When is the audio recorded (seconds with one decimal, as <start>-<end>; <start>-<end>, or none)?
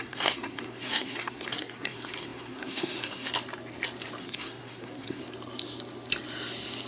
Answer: 3.3-4.2; 5.2-6.9